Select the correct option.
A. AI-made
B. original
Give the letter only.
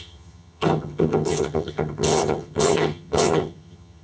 A